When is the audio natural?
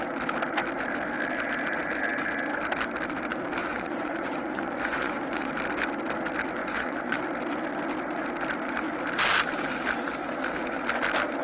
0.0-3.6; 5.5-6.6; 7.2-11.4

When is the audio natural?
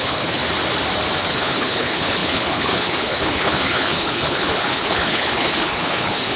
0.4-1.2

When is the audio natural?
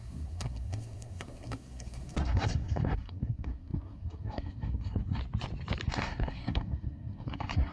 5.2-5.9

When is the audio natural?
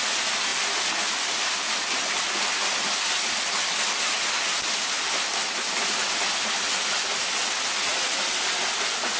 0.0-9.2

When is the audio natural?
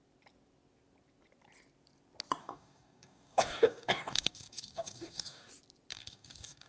0.0-2.4; 5.5-5.9